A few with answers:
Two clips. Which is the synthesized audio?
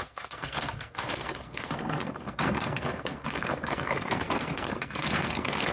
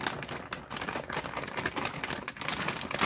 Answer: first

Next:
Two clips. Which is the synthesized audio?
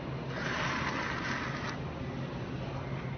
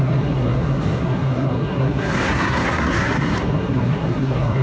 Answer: second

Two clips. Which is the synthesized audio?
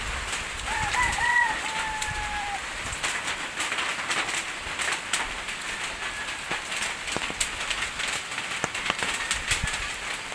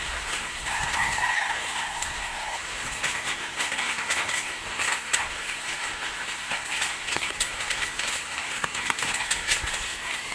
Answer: second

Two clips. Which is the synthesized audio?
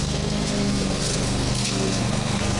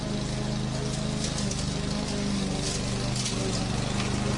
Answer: first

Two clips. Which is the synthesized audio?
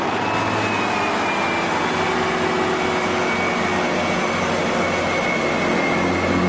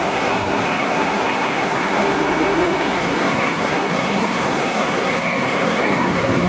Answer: second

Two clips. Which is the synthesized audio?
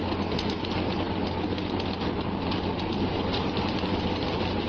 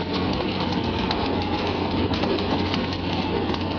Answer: second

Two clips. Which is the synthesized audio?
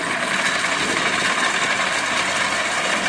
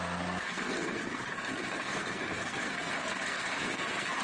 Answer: second